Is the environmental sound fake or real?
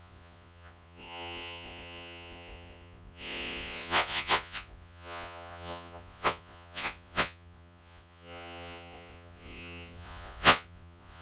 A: fake